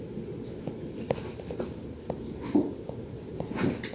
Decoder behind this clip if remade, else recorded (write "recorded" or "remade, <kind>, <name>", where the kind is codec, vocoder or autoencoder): recorded